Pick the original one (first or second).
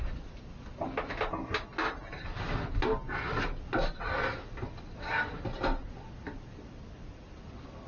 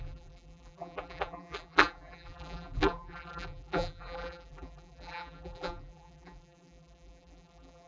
first